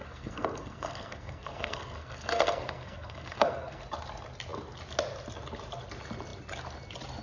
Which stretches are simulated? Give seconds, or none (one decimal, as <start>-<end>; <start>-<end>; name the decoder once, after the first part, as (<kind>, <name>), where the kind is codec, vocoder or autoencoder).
0.0-3.8 (codec, SNAC)